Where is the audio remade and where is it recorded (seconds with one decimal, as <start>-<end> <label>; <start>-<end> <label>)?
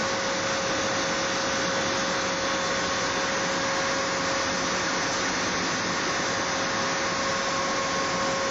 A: 0.0-8.5 recorded